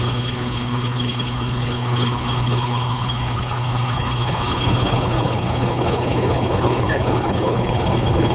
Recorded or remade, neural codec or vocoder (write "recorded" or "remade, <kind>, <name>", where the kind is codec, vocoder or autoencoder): remade, codec, HILCodec